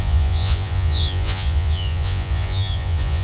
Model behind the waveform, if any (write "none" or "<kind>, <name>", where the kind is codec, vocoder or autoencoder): vocoder, Vocos